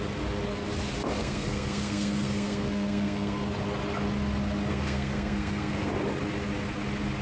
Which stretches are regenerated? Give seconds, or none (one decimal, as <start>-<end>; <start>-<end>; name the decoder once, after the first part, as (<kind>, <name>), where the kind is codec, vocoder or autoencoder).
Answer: 1.2-3.4 (codec, SNAC); 4.7-5.9